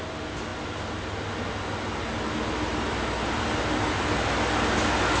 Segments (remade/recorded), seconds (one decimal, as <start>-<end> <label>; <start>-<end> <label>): 0.0-5.2 recorded